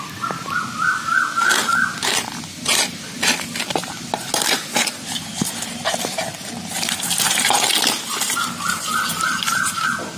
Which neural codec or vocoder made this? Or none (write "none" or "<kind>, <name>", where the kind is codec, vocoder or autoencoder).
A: none